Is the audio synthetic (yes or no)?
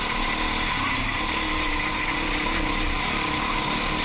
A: no